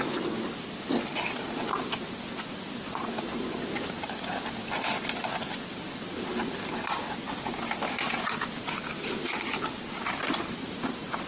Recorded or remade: recorded